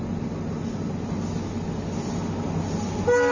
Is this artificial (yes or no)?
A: no